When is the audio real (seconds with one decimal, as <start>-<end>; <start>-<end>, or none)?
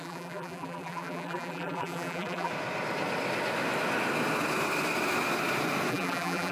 2.5-5.9